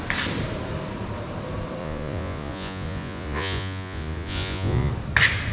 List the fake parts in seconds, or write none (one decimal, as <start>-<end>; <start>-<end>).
1.8-4.9